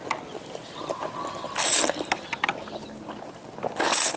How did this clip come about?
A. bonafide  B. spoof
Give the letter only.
A